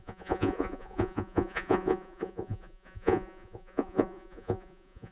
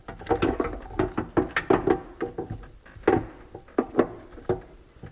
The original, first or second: second